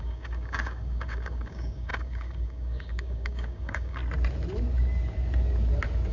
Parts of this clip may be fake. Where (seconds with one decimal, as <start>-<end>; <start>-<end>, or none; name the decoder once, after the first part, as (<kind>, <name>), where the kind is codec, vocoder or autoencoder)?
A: 0.0-4.0 (codec, DAC)